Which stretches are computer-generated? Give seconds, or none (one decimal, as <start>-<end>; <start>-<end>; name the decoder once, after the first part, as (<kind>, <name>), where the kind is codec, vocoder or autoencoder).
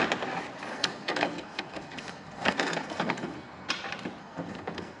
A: 0.7-3.7 (codec, SNAC); 4.2-5.0